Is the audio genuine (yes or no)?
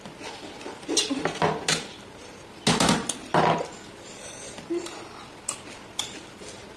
yes